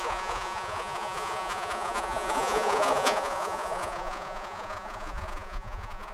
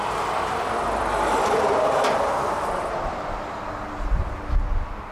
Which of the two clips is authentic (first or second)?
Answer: second